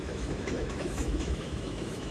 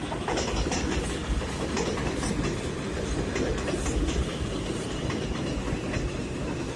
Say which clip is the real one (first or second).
second